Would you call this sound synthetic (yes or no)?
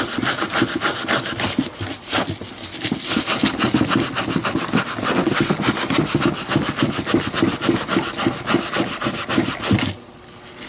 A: no